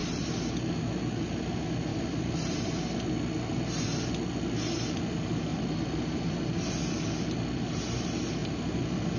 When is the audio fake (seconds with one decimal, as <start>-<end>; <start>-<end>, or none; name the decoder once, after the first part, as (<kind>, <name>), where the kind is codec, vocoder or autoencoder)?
0.0-0.5 (vocoder, BigVGAN v2); 1.9-2.8; 5.5-6.2